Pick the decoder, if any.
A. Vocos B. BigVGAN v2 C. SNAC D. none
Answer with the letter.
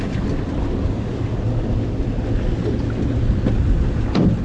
D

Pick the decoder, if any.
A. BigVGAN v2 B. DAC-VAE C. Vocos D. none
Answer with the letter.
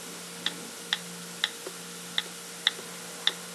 D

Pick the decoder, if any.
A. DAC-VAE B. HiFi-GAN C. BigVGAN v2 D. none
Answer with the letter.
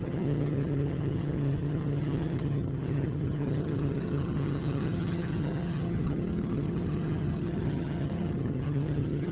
B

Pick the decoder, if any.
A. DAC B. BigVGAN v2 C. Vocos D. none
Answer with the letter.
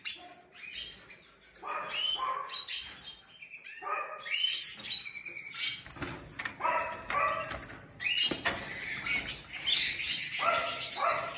D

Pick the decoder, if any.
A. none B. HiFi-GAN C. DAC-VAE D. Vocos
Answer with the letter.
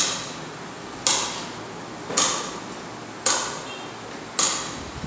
A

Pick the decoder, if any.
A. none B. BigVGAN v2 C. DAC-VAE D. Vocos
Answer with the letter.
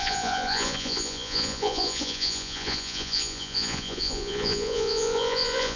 D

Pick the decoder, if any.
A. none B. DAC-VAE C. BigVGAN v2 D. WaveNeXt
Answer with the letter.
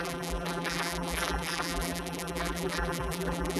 C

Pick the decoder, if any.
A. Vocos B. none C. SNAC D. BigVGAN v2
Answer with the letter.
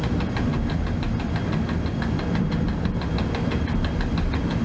B